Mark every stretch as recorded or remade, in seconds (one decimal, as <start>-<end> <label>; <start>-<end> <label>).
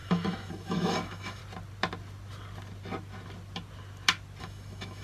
0.0-1.4 remade; 1.4-4.4 recorded; 4.4-5.0 remade